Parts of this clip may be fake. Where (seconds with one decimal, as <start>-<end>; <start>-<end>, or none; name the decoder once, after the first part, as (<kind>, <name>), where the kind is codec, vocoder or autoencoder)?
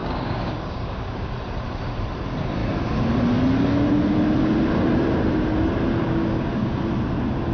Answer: 0.0-1.3 (codec, DAC); 5.9-6.8